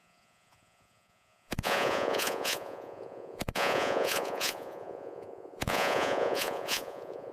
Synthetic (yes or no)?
yes